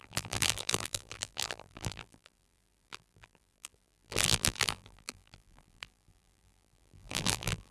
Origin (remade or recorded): remade